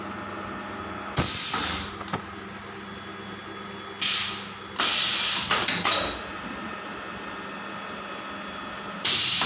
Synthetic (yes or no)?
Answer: no